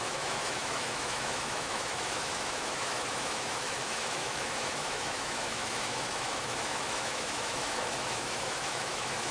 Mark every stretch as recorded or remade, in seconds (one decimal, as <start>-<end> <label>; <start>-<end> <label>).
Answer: 0.0-9.3 remade